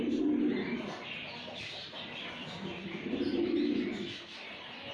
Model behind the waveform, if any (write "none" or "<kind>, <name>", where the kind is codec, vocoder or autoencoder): none